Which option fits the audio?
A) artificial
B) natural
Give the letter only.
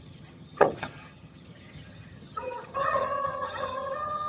A